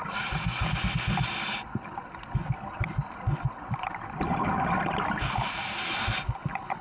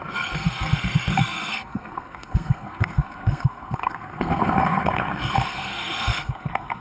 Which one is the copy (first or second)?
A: second